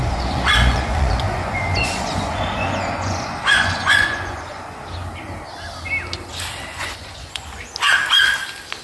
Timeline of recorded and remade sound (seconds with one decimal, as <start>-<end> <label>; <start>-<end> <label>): 0.0-4.8 remade; 4.8-6.7 recorded; 6.7-7.6 remade; 7.6-8.8 recorded